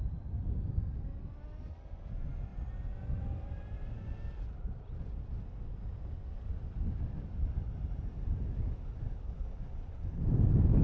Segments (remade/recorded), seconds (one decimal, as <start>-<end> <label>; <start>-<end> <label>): 0.0-9.7 recorded; 9.7-10.3 remade; 10.3-10.8 recorded